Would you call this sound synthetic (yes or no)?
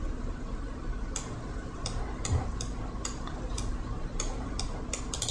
no